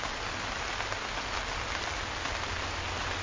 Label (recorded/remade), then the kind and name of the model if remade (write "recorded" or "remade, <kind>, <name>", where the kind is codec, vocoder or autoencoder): recorded